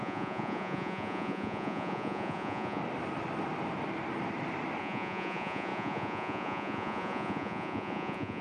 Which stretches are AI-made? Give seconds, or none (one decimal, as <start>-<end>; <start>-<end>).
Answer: 0.0-2.8; 4.8-8.4